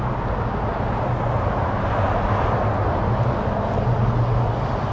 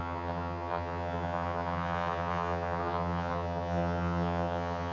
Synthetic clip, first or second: second